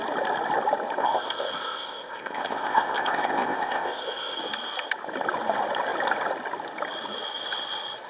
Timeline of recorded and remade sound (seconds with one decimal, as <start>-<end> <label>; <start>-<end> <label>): 0.0-1.0 recorded; 1.0-4.4 remade; 4.4-8.1 recorded